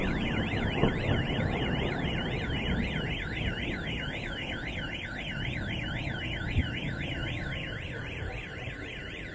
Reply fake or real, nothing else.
real